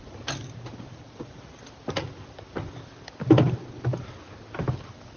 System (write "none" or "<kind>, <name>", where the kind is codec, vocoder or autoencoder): none